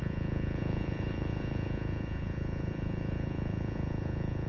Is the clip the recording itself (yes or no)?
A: no